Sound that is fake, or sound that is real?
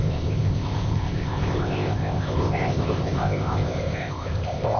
fake